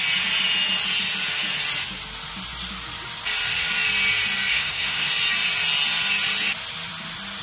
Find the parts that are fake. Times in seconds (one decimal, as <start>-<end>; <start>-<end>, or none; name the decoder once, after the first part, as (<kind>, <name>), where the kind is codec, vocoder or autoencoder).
4.5-5.1 (codec, SNAC)